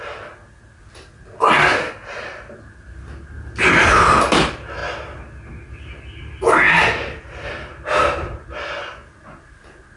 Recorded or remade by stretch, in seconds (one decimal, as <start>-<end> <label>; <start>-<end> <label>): 0.0-10.0 recorded